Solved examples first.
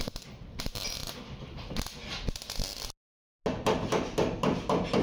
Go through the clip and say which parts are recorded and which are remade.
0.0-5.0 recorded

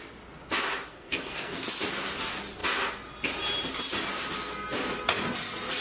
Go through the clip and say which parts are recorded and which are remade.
0.0-0.9 recorded; 0.9-1.7 remade; 1.7-5.8 recorded

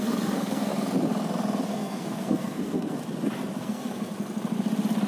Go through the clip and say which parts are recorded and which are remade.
0.0-0.7 remade; 0.7-1.7 recorded; 1.7-3.0 remade; 3.0-3.6 recorded; 3.6-4.1 remade; 4.1-5.1 recorded

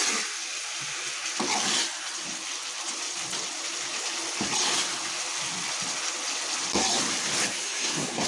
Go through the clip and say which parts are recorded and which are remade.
0.0-7.6 recorded; 7.6-8.3 remade

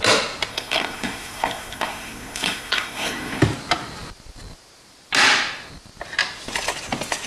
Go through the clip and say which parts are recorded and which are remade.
0.0-0.5 recorded; 0.5-3.4 remade; 3.4-7.3 recorded

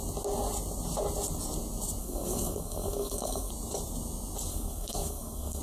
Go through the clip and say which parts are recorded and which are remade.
0.0-2.0 recorded; 2.0-3.5 remade; 3.5-4.5 recorded; 4.5-5.6 remade

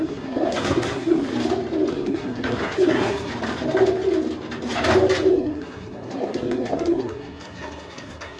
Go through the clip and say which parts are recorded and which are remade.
0.0-1.3 remade; 1.3-1.9 recorded; 1.9-3.3 remade; 3.3-5.3 recorded; 5.3-8.4 remade

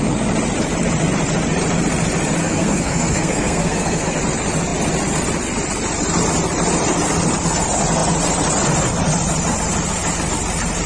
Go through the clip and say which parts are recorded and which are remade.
0.0-2.4 recorded; 2.4-4.2 remade; 4.2-10.9 recorded